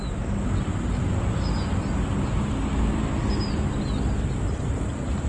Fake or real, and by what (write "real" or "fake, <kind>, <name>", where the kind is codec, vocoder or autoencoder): real